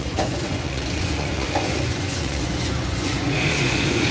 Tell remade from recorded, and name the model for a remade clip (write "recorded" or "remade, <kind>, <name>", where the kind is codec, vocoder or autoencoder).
remade, vocoder, Vocos